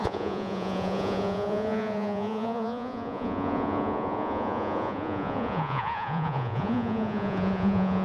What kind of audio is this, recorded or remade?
remade